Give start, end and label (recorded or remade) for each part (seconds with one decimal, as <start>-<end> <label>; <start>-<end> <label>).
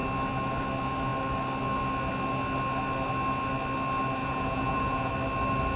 0.0-4.2 recorded; 4.2-5.1 remade; 5.1-5.8 recorded